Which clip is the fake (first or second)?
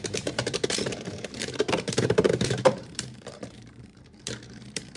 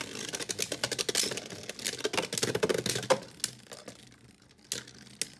first